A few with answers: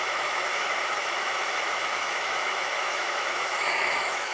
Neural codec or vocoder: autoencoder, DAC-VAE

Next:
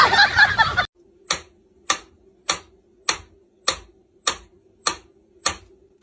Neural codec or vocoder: none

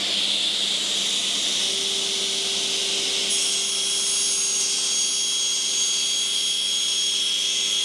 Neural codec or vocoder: none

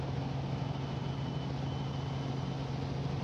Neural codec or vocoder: none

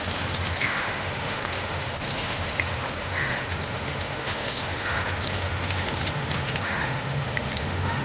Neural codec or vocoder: autoencoder, DAC-VAE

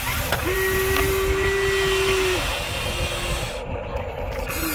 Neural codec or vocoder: none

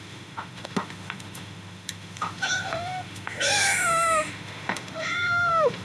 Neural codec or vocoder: autoencoder, DAC-VAE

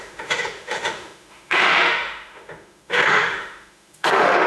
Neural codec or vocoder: autoencoder, DAC-VAE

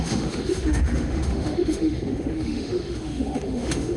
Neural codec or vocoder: autoencoder, DAC-VAE